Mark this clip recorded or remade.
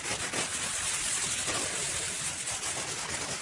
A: recorded